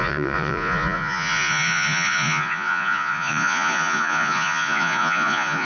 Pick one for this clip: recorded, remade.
remade